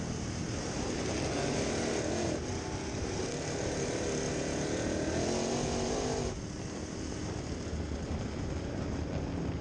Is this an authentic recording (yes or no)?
yes